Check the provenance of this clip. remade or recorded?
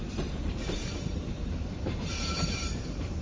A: remade